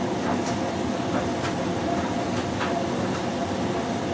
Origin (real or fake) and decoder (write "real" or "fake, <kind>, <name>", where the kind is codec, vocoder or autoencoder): real